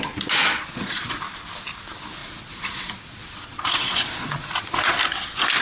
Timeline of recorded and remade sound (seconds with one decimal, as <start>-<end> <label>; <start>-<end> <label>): 0.0-0.4 recorded; 0.4-1.2 remade; 1.2-2.2 recorded; 2.2-5.0 remade; 5.0-5.6 recorded